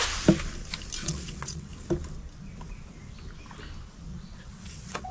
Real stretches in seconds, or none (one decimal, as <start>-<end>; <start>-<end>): 0.0-1.0; 1.7-4.1

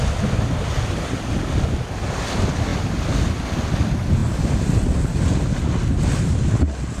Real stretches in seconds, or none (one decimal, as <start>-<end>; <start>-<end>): 0.0-7.0

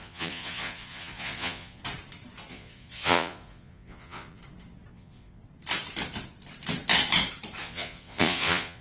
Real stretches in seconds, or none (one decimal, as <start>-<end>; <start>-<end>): 1.8-2.5; 4.4-4.9; 5.4-7.6

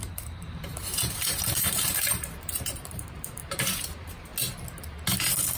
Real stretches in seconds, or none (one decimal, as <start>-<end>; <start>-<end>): 4.3-5.6